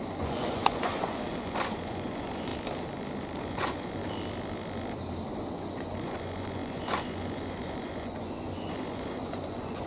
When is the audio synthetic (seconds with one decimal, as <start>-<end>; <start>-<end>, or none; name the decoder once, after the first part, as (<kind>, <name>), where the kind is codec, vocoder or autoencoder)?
0.0-2.5 (vocoder, Vocos); 3.4-4.0; 5.5-9.9

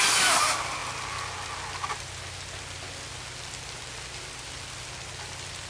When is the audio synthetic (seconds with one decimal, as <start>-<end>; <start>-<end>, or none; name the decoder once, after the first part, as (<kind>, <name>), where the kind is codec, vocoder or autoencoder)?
none